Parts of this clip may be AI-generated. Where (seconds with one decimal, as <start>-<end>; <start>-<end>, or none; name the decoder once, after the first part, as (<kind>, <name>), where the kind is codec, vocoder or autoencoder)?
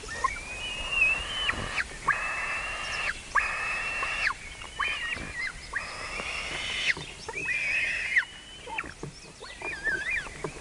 none